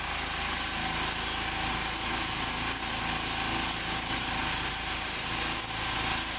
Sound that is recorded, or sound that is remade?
recorded